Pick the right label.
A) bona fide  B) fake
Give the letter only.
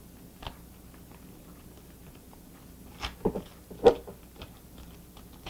A